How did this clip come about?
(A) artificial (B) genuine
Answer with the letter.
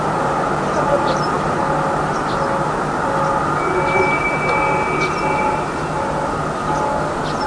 B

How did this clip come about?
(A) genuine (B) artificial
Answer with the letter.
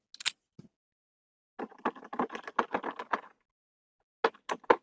A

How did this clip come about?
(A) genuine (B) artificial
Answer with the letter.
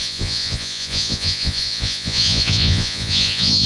B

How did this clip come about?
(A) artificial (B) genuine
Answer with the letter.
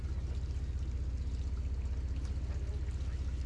B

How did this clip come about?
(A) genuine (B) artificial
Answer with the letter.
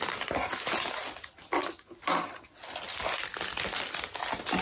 A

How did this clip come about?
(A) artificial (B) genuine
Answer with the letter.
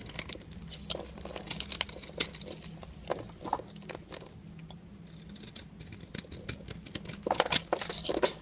B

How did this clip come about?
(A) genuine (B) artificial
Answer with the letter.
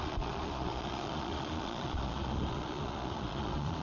B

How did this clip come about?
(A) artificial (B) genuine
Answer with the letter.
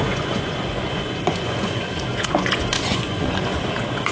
A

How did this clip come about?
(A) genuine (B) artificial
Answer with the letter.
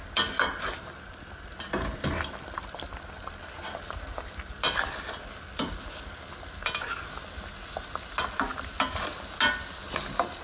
A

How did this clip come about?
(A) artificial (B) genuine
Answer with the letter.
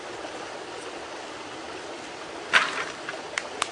B